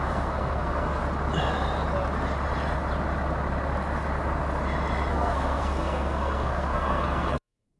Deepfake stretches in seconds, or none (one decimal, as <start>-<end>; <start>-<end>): 0.0-1.0; 5.1-7.8